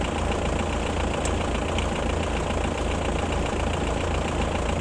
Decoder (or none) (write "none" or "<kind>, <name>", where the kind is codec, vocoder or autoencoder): none